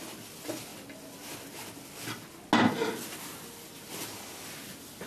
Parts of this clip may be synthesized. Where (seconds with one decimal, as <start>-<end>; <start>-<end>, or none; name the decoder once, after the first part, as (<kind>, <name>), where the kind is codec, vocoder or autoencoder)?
none